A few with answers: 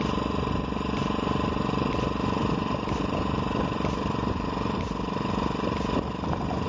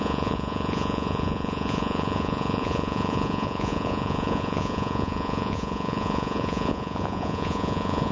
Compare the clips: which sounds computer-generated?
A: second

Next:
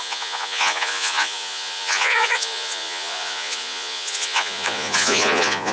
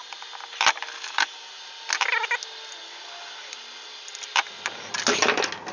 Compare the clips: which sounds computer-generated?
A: first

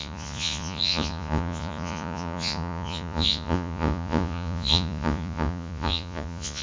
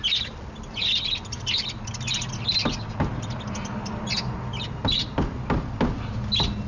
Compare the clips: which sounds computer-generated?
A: first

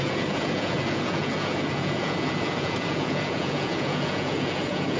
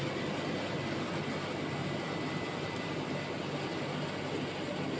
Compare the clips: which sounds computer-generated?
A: first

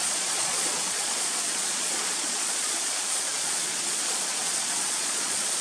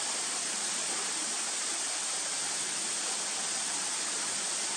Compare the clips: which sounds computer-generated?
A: first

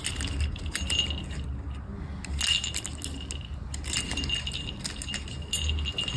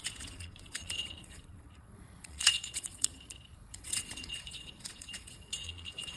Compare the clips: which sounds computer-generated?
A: second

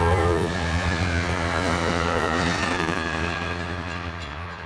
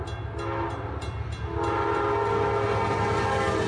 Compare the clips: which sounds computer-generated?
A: first